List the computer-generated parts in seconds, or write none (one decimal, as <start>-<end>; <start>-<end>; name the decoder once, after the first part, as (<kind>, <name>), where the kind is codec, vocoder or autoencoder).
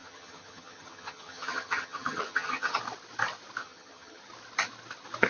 0.0-2.8 (vocoder, HiFi-GAN); 3.6-4.2